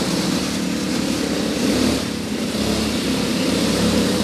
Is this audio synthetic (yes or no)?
yes